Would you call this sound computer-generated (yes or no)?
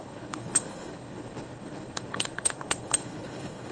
yes